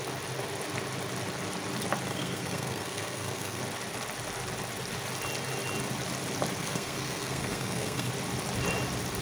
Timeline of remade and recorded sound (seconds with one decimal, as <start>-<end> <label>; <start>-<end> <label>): 0.0-2.1 recorded; 2.1-3.6 remade; 3.6-6.6 recorded; 6.6-8.1 remade; 8.1-9.2 recorded